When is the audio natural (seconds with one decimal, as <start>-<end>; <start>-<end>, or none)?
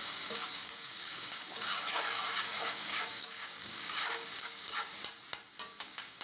5.0-5.8